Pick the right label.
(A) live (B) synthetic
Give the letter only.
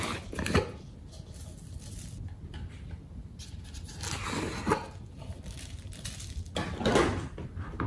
A